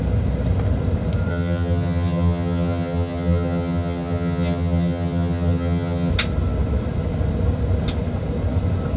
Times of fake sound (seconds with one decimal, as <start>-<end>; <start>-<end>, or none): 1.3-6.1